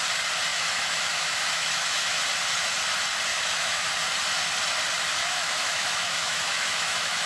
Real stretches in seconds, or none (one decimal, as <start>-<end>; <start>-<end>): 0.0-0.5; 2.2-3.3; 3.9-5.2